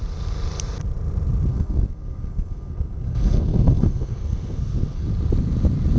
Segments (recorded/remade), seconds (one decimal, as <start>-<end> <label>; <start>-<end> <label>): 0.0-1.5 recorded; 1.5-5.1 remade; 5.1-6.0 recorded